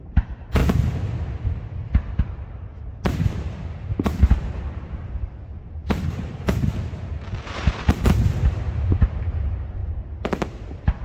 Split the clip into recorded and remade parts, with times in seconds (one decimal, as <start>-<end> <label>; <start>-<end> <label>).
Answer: 0.0-0.6 remade; 0.6-2.9 recorded; 2.9-9.8 remade; 9.8-10.5 recorded; 10.5-11.0 remade

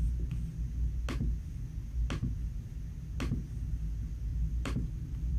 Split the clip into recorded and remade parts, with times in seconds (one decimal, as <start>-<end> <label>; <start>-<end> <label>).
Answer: 0.0-4.3 recorded; 4.3-5.4 remade

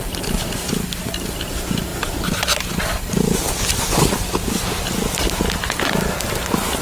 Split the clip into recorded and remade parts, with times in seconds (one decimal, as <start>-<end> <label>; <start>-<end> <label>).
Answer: 0.0-6.8 recorded

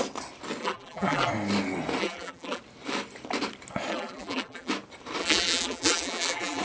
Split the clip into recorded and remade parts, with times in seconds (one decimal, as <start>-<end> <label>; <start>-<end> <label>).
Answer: 0.0-0.6 recorded; 0.6-1.3 remade; 1.3-2.0 recorded; 2.0-2.6 remade; 2.6-3.9 recorded; 3.9-4.7 remade; 4.7-5.2 recorded; 5.2-6.6 remade

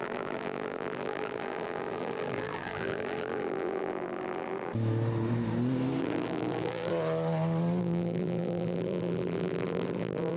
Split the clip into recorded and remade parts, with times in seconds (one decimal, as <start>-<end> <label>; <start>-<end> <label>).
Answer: 0.0-4.7 remade; 4.7-6.0 recorded; 6.0-6.9 remade; 6.9-7.8 recorded; 7.8-10.4 remade

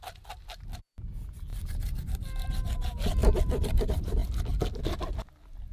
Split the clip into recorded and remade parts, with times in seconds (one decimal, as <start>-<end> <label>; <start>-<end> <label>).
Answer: 0.0-5.7 recorded

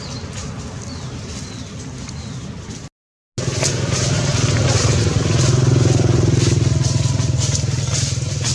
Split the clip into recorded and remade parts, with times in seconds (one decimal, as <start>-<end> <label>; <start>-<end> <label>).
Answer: 0.0-8.5 recorded

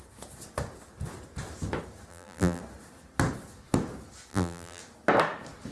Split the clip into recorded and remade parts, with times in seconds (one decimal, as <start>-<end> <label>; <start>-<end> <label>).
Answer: 0.0-2.1 recorded; 2.1-2.6 remade; 2.6-4.3 recorded; 4.3-4.8 remade; 4.8-5.7 recorded